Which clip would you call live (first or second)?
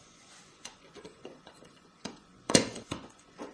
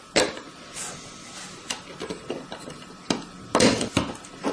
second